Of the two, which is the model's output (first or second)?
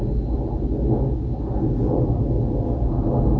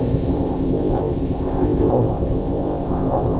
second